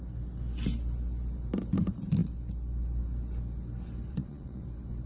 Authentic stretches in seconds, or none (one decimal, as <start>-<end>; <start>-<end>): 0.0-4.1; 4.6-5.1